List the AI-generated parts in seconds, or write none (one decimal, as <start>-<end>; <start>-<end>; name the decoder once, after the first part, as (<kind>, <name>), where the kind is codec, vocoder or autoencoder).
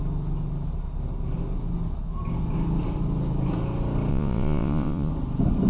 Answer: 4.1-5.1 (vocoder, Vocos)